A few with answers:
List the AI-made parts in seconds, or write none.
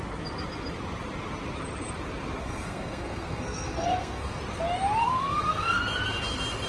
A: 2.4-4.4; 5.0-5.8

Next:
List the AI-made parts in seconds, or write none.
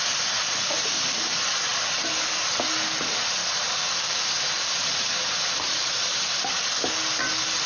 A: 1.7-2.4; 3.4-6.5